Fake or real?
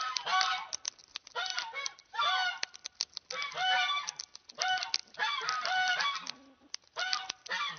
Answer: real